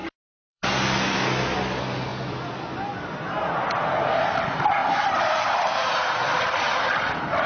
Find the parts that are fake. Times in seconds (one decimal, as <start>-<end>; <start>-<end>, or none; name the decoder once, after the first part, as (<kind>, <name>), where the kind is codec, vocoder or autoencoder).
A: 0.0-0.7 (vocoder, BigVGAN v2); 4.8-6.8